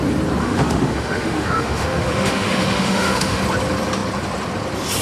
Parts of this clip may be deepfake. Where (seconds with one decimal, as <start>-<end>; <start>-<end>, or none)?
0.4-3.4